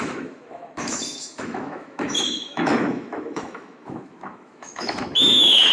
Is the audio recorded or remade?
remade